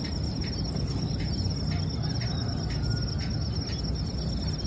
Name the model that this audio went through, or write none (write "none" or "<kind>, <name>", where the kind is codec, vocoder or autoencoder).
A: none